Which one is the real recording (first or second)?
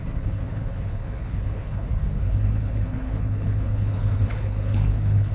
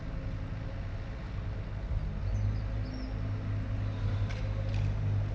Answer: second